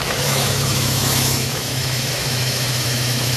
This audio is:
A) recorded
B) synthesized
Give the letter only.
B